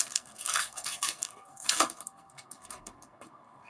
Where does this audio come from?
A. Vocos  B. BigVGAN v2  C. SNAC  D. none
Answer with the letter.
C